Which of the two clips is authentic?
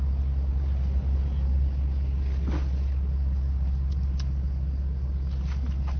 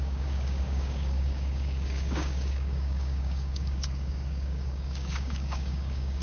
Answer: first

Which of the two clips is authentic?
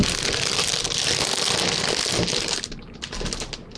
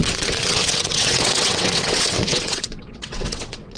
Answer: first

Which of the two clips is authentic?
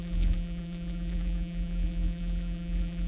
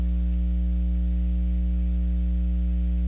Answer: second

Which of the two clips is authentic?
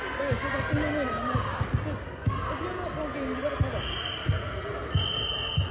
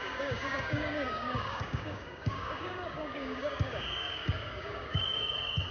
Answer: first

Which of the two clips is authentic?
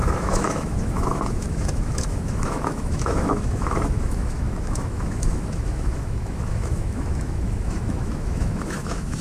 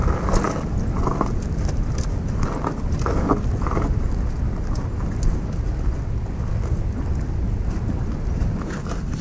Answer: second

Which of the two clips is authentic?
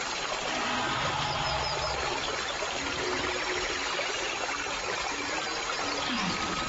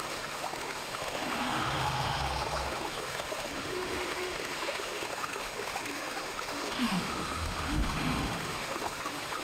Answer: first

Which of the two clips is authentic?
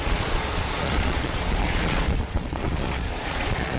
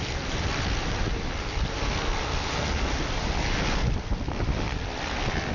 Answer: second